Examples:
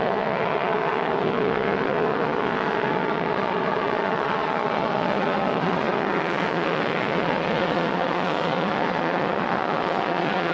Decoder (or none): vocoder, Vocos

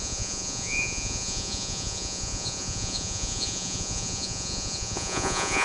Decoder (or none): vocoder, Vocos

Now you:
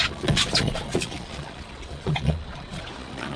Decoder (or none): vocoder, Vocos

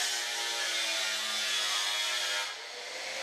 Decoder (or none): none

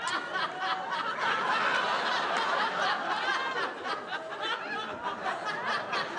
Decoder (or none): none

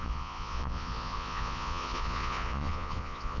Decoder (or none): vocoder, Vocos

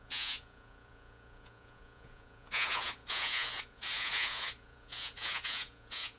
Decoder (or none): vocoder, Vocos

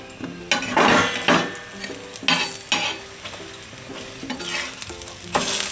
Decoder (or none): none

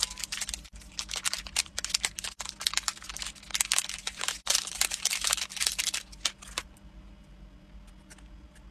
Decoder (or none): none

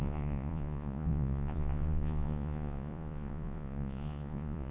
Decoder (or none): vocoder, Vocos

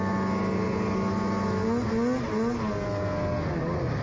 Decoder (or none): none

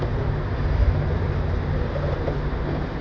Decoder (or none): none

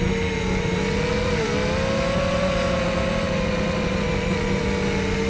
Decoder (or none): none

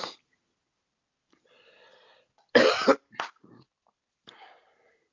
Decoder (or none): none